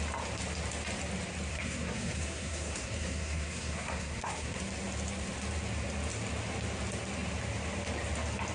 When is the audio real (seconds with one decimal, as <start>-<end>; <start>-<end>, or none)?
0.0-1.5; 4.6-8.5